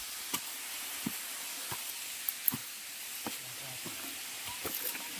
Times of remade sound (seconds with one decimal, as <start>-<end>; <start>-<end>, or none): 2.6-3.3